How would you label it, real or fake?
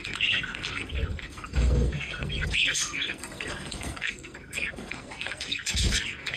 fake